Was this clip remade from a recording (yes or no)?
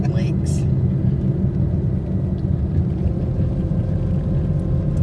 no